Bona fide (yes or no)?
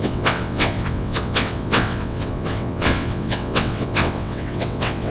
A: no